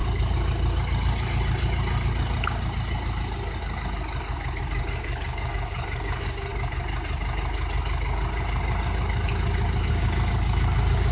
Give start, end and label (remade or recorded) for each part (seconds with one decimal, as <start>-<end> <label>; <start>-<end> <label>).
0.0-4.6 recorded; 4.6-6.5 remade; 6.5-9.9 recorded; 9.9-11.1 remade